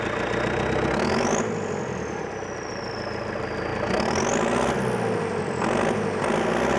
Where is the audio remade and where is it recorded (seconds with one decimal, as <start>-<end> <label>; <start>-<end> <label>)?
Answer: 0.0-6.8 recorded

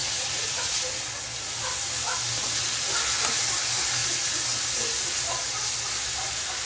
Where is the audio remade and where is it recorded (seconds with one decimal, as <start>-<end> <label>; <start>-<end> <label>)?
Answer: 0.0-1.0 remade; 1.0-6.7 recorded

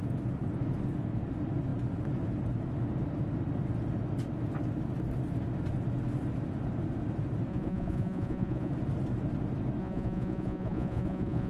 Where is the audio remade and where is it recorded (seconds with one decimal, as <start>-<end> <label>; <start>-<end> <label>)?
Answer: 0.0-7.5 recorded; 7.5-8.7 remade; 8.7-9.8 recorded; 9.8-11.5 remade

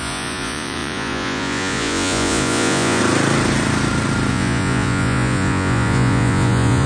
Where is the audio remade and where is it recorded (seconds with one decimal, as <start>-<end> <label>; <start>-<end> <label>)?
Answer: 0.0-3.0 remade; 3.0-4.3 recorded; 4.3-6.9 remade

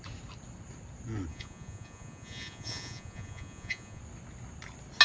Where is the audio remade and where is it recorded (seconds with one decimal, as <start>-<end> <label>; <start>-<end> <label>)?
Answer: 0.0-1.3 recorded; 1.3-4.0 remade; 4.0-5.0 recorded

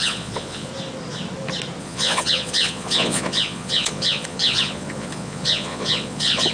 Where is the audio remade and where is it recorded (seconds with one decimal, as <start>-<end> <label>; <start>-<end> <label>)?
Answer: 0.0-0.7 remade; 0.7-1.8 recorded; 1.8-6.5 remade

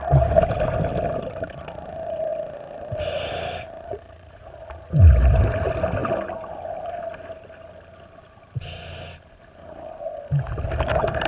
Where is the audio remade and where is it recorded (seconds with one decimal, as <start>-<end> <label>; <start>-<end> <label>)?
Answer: 0.0-3.9 recorded; 3.9-5.0 remade; 5.0-11.3 recorded